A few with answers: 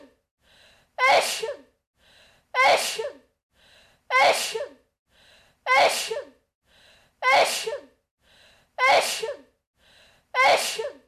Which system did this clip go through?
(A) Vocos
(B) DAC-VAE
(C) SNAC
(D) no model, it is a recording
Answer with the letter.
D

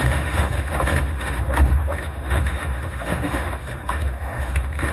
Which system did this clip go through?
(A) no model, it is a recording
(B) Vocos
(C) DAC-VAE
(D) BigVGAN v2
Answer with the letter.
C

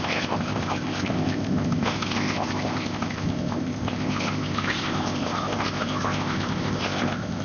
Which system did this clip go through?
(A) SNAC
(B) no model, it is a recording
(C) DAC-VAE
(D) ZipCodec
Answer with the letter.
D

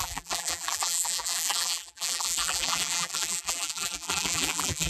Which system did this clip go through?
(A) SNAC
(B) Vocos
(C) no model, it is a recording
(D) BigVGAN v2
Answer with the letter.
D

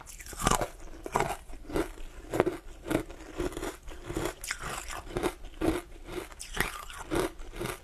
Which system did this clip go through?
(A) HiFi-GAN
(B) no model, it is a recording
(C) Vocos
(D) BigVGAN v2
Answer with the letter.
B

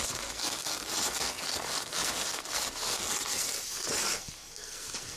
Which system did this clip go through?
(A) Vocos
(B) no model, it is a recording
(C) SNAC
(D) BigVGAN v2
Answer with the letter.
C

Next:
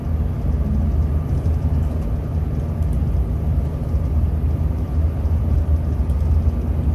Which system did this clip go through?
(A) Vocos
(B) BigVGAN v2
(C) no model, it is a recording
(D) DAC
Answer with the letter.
C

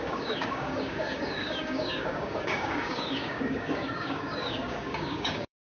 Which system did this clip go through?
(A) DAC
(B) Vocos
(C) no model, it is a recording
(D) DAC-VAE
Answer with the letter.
A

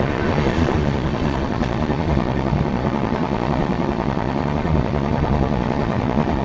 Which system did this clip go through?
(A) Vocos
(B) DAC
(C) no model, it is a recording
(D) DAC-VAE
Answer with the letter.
A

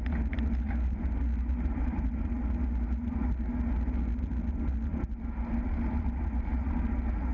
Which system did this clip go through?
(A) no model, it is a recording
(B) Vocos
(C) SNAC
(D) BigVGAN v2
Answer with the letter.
A